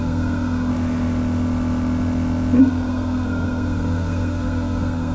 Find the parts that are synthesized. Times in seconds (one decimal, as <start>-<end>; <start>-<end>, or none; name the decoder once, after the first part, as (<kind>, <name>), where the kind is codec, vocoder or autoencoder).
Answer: 0.0-0.7 (codec, SNAC); 2.6-5.1